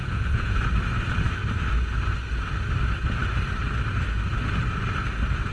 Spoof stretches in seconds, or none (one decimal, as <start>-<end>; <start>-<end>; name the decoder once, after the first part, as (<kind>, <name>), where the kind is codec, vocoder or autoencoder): 0.0-0.6 (vocoder, Vocos)